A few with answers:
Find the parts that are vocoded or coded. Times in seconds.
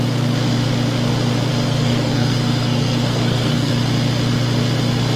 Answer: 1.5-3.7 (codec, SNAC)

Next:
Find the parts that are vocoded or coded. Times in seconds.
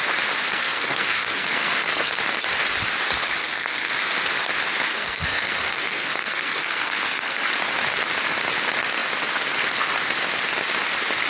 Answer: 0.4-2.2 (codec, SNAC); 3.4-3.9; 4.9-7.5